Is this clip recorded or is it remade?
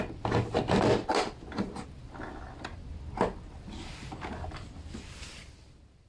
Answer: recorded